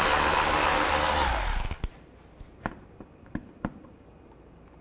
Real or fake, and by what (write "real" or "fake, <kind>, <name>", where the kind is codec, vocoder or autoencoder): real